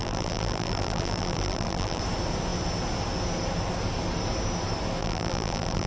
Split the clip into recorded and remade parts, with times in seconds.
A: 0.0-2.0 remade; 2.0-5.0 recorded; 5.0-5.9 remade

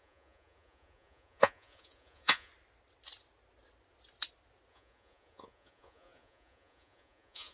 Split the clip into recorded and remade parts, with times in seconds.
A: 0.0-2.5 remade; 2.5-4.7 recorded; 4.7-7.5 remade

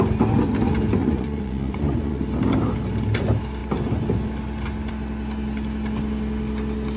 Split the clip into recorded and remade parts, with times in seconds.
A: 0.0-1.0 recorded; 1.0-2.2 remade; 2.2-7.0 recorded

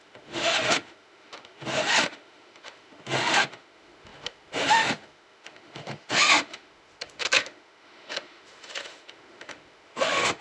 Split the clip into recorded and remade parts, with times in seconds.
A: 0.0-10.4 remade

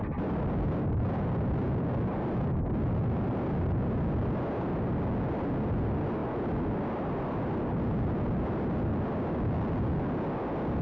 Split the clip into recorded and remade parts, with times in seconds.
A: 0.0-10.8 recorded